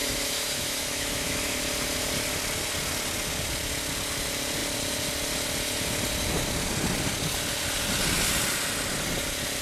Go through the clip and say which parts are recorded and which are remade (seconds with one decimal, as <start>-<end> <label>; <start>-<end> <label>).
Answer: 0.0-1.6 remade; 1.6-9.6 recorded